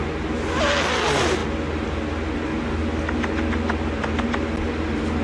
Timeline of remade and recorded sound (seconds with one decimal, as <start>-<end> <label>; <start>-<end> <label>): 0.0-5.2 recorded